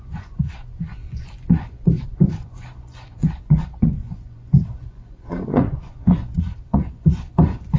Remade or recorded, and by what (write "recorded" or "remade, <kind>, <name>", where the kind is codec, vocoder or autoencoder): remade, vocoder, Vocos